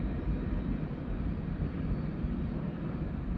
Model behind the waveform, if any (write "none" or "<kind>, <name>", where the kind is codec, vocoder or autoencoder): none